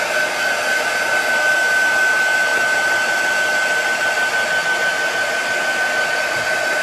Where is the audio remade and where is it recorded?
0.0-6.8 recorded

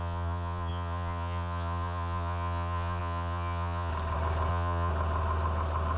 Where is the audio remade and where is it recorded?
0.0-3.9 remade; 3.9-4.5 recorded; 4.5-4.9 remade; 4.9-6.0 recorded